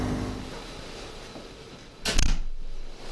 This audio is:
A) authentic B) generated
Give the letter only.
A